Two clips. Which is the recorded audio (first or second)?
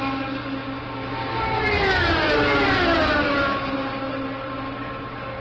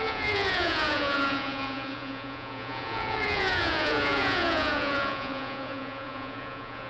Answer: first